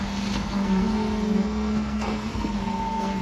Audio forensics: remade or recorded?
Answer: remade